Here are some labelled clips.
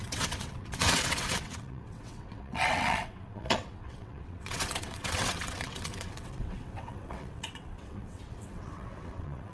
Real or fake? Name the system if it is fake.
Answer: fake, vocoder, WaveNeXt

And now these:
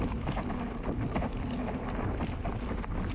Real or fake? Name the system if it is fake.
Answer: real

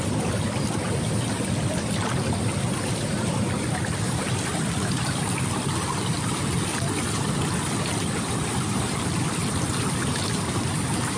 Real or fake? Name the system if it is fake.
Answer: real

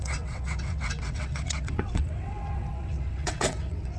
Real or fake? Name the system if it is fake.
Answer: fake, vocoder, WaveNeXt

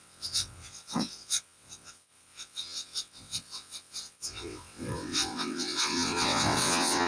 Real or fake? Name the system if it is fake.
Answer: fake, vocoder, WaveNeXt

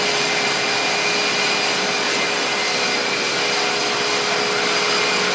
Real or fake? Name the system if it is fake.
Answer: real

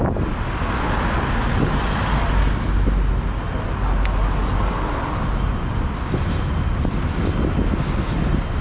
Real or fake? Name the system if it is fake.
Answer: real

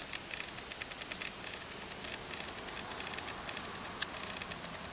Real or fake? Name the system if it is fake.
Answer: real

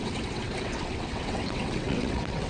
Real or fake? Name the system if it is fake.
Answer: fake, vocoder, WaveNeXt